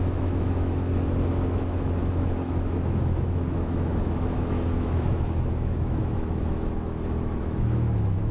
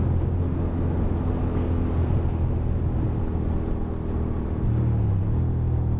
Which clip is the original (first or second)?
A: second